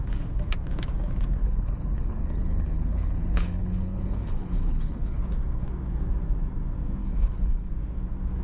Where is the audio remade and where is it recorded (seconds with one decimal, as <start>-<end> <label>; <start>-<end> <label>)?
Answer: 0.0-1.4 recorded; 1.4-5.2 remade; 5.2-7.0 recorded; 7.0-7.7 remade; 7.7-8.4 recorded